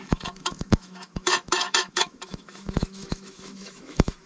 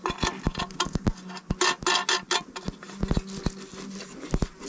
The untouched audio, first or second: second